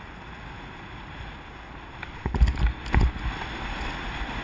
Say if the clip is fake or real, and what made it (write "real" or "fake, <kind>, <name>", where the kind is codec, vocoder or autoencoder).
real